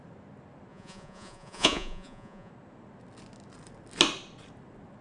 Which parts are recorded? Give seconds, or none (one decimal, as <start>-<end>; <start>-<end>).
0.0-0.7; 2.5-5.0